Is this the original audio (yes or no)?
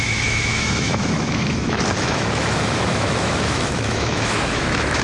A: no